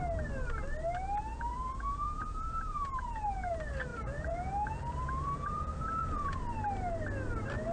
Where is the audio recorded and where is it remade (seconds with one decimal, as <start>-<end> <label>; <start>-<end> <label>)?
0.0-1.3 recorded; 1.3-3.5 remade; 3.5-3.9 recorded; 3.9-6.4 remade; 6.4-7.7 recorded